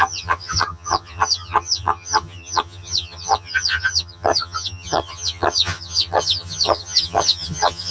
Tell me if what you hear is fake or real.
fake